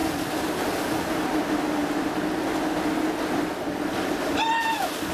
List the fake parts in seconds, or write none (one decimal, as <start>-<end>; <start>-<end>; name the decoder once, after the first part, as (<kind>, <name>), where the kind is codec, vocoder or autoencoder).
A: none